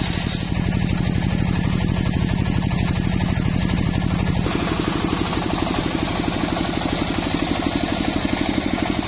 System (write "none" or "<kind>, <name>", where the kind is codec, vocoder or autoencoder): none